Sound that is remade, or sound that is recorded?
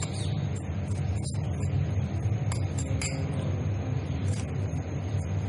recorded